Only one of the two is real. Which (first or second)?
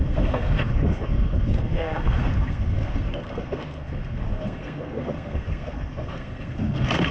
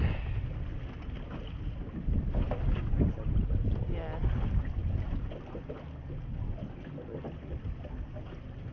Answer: second